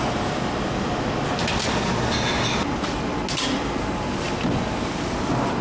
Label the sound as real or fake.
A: real